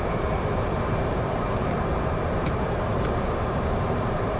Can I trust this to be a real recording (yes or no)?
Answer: no